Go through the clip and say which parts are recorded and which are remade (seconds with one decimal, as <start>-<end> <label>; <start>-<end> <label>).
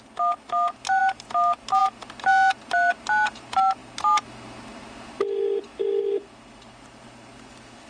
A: 0.0-7.9 recorded